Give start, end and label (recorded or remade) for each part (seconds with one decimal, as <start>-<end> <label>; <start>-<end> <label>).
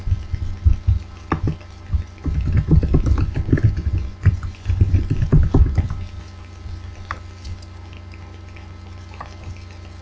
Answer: 0.0-4.1 recorded; 4.1-5.0 remade; 5.0-10.0 recorded